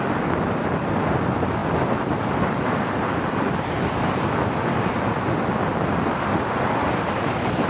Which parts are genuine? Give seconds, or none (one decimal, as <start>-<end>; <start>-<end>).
0.0-7.7

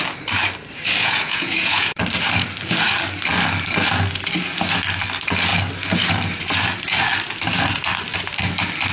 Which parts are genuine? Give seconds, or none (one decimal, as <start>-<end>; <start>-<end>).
0.0-1.0; 2.0-8.9

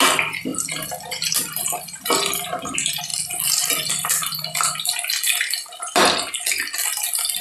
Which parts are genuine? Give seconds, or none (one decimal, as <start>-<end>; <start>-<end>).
0.0-7.4

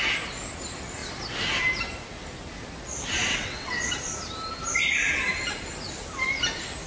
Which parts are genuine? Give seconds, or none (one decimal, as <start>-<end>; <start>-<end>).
0.0-3.3; 3.9-6.9